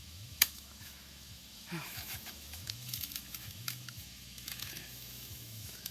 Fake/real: fake